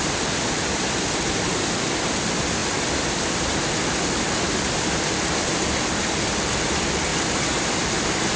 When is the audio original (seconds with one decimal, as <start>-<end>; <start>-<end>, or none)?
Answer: 0.0-7.1